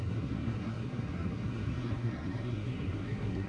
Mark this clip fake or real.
fake